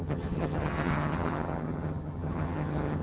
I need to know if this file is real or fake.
fake